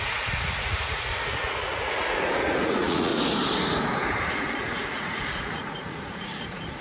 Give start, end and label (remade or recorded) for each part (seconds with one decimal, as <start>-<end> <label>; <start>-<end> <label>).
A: 0.0-3.1 remade; 3.1-4.3 recorded; 4.3-6.8 remade